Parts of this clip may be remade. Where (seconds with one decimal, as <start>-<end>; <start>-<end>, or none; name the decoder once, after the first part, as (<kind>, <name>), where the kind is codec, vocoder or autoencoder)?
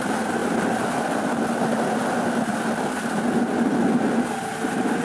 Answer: none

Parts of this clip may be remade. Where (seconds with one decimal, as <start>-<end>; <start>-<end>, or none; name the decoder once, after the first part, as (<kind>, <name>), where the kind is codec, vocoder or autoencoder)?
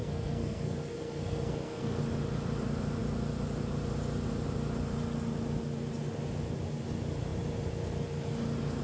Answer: 0.0-2.0 (codec, SNAC)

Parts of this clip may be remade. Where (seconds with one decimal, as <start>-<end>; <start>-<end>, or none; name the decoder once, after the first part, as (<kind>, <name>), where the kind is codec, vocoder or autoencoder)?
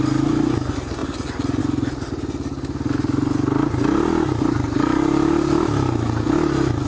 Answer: none